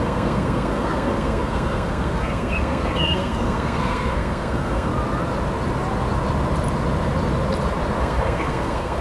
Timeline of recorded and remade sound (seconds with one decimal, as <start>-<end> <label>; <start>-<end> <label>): 0.0-4.9 remade; 4.9-8.0 recorded; 8.0-9.0 remade